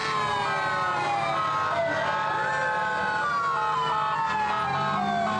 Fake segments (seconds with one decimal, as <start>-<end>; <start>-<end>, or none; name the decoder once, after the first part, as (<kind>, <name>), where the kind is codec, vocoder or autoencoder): none